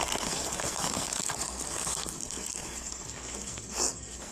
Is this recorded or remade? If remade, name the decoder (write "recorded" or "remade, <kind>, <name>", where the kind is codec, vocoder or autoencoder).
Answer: remade, codec, SNAC